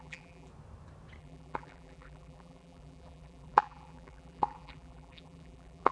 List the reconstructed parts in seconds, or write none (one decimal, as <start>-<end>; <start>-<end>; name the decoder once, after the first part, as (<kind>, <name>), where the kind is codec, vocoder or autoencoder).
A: 0.0-0.5 (vocoder, BigVGAN v2); 1.2-5.9